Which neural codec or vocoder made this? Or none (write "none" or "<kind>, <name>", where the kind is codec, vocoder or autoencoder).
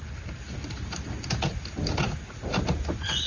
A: none